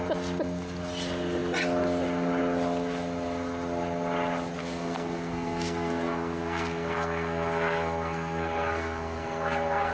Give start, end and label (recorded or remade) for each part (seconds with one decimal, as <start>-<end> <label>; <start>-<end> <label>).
0.0-4.6 recorded; 4.6-9.9 remade